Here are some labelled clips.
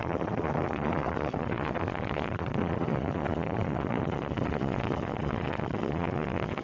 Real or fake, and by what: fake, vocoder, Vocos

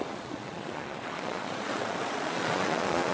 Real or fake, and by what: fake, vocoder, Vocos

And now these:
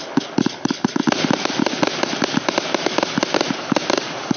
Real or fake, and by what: real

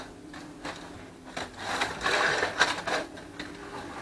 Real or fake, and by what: fake, vocoder, BigVGAN v2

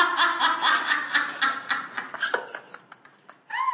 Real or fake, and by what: real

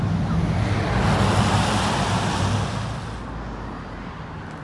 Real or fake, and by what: real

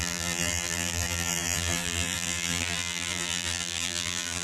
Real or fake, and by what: fake, vocoder, BigVGAN v2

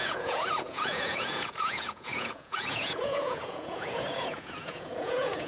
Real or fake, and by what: fake, vocoder, Vocos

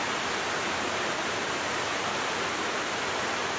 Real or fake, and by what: real